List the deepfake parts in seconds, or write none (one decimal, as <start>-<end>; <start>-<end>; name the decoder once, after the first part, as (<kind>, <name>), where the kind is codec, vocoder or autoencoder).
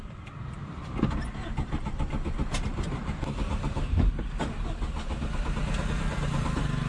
0.6-4.6 (vocoder, BigVGAN v2)